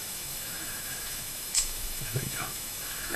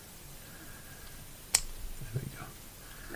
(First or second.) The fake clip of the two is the first